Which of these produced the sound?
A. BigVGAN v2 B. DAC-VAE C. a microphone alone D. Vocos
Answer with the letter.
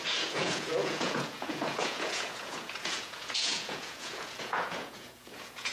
D